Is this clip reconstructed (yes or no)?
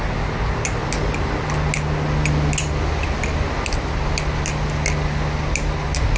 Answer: no